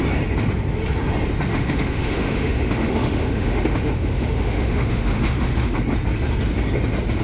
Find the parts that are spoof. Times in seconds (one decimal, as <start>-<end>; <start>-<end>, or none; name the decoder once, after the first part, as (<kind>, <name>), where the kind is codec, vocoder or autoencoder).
1.5-5.8 (autoencoder, DAC-VAE)